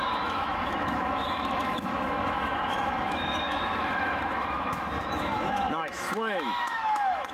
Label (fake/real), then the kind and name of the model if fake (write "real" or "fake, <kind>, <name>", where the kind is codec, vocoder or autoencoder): fake, autoencoder, DAC-VAE